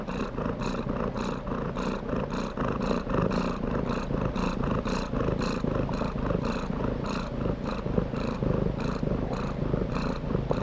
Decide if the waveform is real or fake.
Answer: real